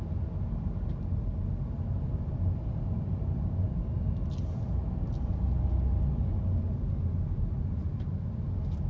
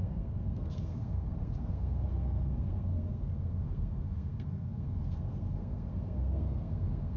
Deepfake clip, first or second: second